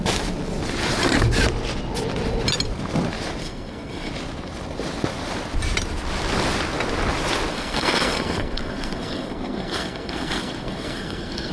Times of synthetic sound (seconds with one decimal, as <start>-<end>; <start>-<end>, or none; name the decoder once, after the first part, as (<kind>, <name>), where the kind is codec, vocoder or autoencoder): 3.4-4.1 (codec, SNAC); 7.5-11.5